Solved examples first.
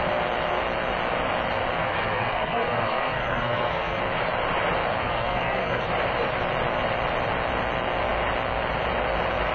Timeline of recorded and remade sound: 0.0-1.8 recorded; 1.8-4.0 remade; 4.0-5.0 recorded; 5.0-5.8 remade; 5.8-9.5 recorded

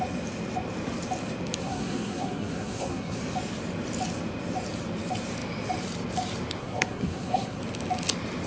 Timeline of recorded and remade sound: 0.0-1.6 recorded; 1.6-3.2 remade; 3.2-6.6 recorded; 6.6-7.6 remade; 7.6-8.5 recorded

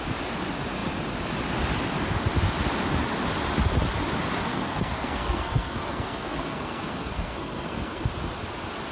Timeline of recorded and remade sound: 0.0-4.5 recorded; 4.5-8.1 remade; 8.1-8.9 recorded

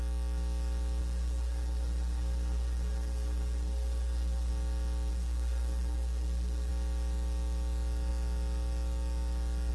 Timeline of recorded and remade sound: 0.0-1.0 recorded; 1.0-4.5 remade; 4.5-5.1 recorded; 5.1-6.7 remade; 6.7-9.7 recorded

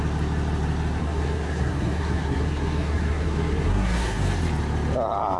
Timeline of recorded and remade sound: 0.0-1.0 recorded; 1.0-4.2 remade; 4.2-5.4 recorded

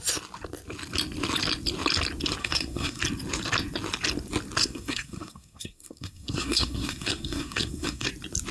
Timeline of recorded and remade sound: 0.0-2.4 recorded; 2.4-3.0 remade; 3.0-4.6 recorded; 4.6-8.1 remade; 8.1-8.5 recorded

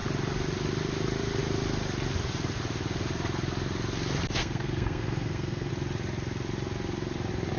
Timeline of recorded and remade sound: 0.0-4.4 recorded; 4.4-5.7 remade; 5.7-7.6 recorded